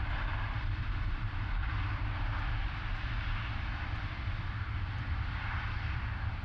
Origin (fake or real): fake